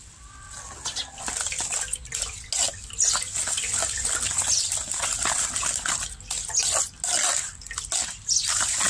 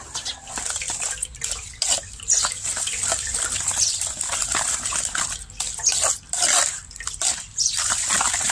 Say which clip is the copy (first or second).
second